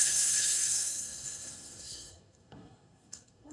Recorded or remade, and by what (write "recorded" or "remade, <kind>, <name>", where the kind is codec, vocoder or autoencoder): remade, codec, SNAC